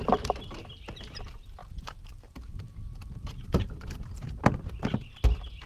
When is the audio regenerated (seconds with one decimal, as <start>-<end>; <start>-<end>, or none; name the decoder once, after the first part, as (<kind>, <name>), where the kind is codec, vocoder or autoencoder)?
1.6-4.4 (vocoder, BigVGAN v2)

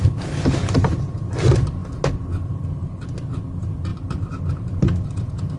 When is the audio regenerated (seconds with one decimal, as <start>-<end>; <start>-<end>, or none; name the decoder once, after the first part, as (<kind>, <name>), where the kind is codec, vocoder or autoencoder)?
none

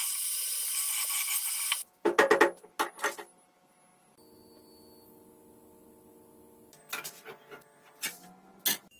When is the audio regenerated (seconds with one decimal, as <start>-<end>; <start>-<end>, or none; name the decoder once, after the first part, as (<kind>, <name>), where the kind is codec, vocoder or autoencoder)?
none

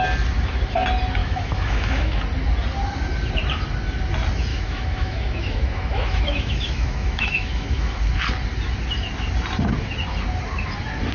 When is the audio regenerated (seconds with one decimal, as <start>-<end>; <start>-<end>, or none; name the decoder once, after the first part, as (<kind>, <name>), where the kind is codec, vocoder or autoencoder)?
1.2-2.2 (autoencoder, DAC-VAE); 4.5-8.0

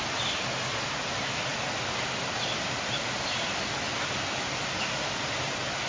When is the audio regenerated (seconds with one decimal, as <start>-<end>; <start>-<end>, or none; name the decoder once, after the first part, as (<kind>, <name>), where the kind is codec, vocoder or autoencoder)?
none